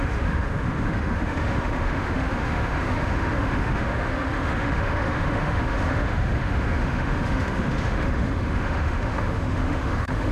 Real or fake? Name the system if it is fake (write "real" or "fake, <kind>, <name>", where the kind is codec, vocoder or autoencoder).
fake, autoencoder, DAC-VAE